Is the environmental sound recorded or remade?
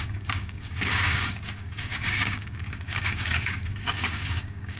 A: remade